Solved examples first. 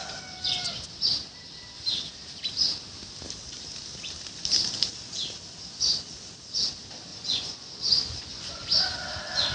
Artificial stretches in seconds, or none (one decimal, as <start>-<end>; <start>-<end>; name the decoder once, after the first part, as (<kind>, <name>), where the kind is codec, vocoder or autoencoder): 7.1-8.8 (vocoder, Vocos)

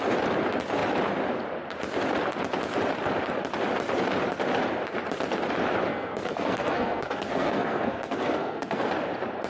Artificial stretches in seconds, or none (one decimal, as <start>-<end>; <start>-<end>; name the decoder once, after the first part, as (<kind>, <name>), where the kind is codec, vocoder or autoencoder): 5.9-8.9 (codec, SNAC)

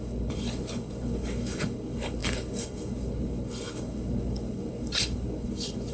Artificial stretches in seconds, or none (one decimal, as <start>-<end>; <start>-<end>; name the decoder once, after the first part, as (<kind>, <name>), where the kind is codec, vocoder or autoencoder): 0.0-5.9 (codec, HILCodec)

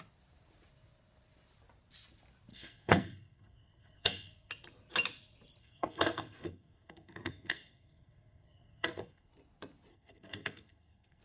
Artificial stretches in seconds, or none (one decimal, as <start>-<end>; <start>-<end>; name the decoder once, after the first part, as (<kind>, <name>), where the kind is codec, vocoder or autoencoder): 2.5-4.5 (codec, SNAC); 5.6-9.3; 9.9-11.2

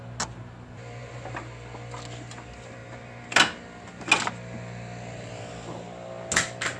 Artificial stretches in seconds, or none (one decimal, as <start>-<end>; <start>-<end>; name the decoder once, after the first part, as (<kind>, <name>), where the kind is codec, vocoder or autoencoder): none

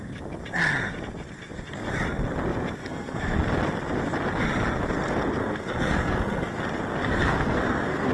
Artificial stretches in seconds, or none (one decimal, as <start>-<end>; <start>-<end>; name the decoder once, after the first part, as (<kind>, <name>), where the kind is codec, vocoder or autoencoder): 2.8-3.4 (codec, SNAC); 5.4-6.6; 7.0-8.1

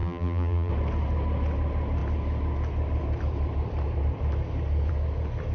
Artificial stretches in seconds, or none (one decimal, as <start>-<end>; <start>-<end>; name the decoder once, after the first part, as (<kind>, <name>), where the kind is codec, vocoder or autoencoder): 0.0-0.7 (vocoder, BigVGAN v2)

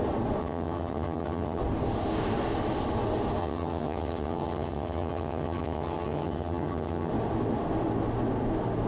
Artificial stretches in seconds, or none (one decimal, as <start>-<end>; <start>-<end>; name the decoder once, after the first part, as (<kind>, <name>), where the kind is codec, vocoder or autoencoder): 0.4-1.6 (vocoder, HiFi-GAN); 3.4-7.1